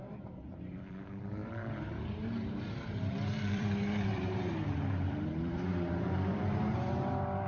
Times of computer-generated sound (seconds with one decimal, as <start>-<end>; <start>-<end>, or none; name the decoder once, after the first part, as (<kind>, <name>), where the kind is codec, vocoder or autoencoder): 0.0-7.5 (vocoder, BigVGAN v2)